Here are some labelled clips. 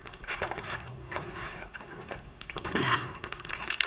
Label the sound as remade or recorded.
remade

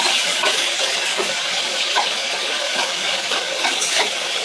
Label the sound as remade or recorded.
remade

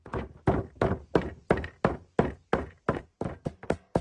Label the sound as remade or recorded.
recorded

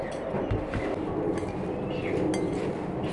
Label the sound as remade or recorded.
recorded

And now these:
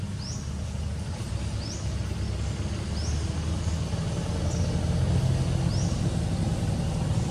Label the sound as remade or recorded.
recorded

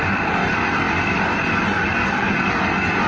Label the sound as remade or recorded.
remade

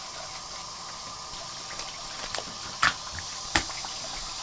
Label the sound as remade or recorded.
recorded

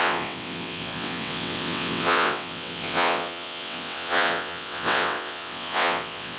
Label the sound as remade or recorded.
remade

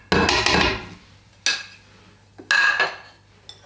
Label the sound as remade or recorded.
recorded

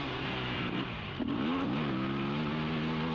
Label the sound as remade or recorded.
recorded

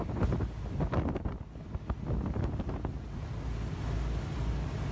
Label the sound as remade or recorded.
recorded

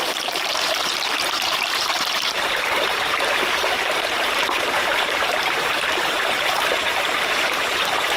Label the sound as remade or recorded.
remade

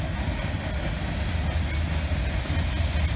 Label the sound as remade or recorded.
recorded